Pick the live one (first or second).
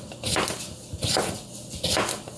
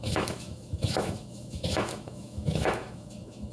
first